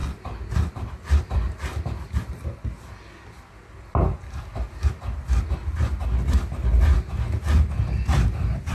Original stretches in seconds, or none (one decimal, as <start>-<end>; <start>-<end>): 0.0-8.7